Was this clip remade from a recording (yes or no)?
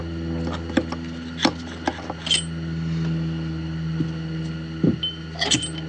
no